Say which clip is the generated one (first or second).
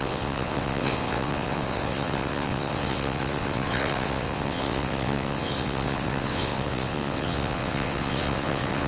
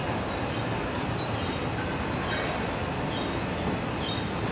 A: first